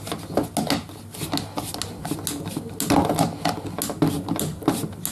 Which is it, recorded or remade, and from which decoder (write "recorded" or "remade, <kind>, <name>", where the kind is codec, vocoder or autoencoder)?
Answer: recorded